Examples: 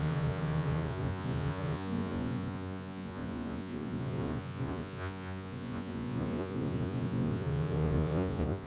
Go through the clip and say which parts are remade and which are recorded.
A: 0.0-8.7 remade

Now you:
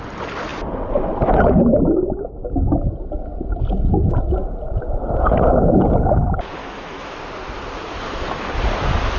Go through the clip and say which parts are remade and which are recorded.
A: 0.0-6.6 recorded; 6.6-7.2 remade; 7.2-9.2 recorded